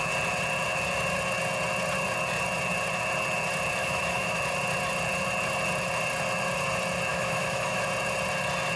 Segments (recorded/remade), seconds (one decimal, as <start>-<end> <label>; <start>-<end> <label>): 0.0-3.8 recorded; 3.8-4.4 remade; 4.4-7.1 recorded; 7.1-7.8 remade; 7.8-8.8 recorded